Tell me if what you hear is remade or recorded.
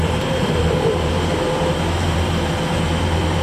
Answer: remade